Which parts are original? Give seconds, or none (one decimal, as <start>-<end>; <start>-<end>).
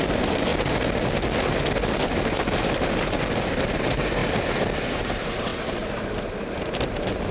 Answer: 0.5-1.8; 4.2-4.8